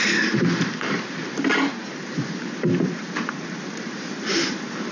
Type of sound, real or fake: fake